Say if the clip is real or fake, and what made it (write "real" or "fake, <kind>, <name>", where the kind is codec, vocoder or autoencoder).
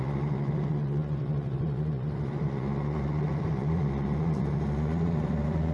fake, vocoder, Vocos